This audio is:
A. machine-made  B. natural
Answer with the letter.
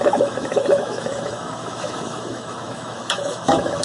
A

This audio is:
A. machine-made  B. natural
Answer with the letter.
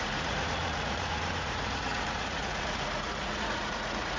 A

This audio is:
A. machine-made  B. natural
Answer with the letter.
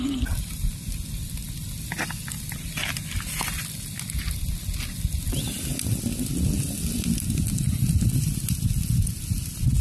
B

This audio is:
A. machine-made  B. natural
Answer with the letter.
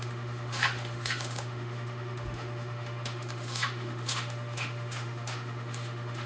A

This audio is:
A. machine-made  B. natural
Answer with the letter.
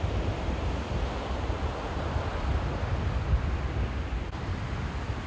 B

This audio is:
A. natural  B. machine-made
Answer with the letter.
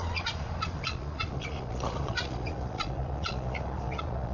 B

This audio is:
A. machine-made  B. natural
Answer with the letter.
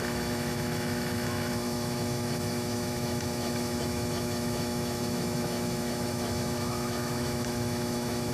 A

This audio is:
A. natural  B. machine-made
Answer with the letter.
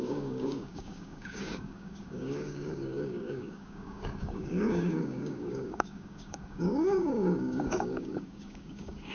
B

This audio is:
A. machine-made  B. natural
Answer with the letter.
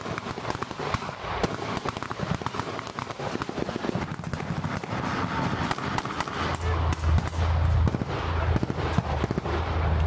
B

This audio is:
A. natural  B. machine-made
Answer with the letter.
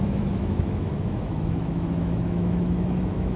B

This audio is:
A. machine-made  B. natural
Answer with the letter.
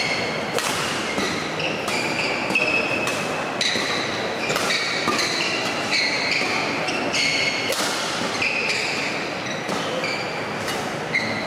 B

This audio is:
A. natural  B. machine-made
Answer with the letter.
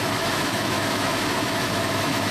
B